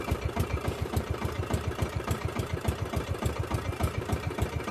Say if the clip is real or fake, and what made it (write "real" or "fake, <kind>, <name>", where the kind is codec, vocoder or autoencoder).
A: fake, vocoder, BigVGAN v2